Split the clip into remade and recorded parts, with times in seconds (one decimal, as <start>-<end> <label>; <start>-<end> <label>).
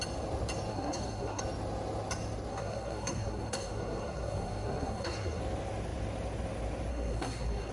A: 0.0-0.7 recorded; 0.7-1.4 remade; 1.4-2.5 recorded; 2.5-5.4 remade; 5.4-6.9 recorded; 6.9-7.7 remade